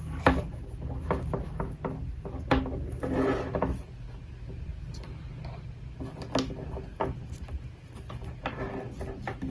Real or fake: real